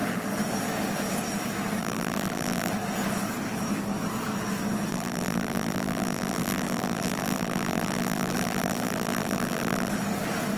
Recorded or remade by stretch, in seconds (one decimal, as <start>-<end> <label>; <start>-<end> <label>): 0.0-1.8 recorded; 1.8-2.7 remade; 2.7-4.9 recorded; 4.9-9.9 remade; 9.9-10.6 recorded